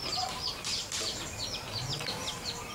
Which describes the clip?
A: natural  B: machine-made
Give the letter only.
B